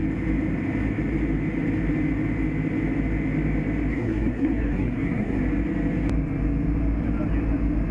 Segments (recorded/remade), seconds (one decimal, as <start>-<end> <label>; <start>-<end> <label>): 0.0-3.9 recorded; 3.9-5.4 remade; 5.4-7.9 recorded